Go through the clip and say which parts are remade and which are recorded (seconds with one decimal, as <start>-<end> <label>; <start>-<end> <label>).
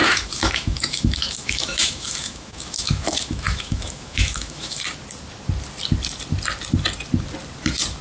0.0-4.8 remade; 4.8-8.0 recorded